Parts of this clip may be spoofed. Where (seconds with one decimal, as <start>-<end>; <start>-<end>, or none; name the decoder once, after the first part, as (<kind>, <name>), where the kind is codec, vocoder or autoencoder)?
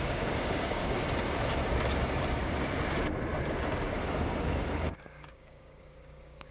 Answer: 0.0-0.8 (codec, DAC); 4.4-6.5